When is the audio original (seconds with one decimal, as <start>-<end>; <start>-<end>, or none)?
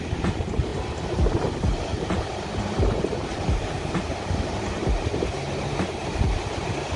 0.0-0.7; 1.4-1.9; 6.1-7.0